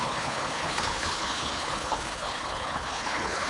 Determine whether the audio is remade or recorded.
remade